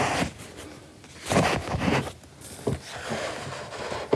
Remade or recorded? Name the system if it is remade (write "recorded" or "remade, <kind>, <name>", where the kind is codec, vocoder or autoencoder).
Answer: recorded